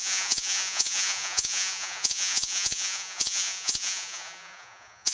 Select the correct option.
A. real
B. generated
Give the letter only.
B